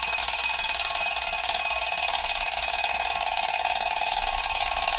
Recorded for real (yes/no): no